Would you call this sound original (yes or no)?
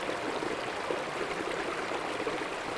yes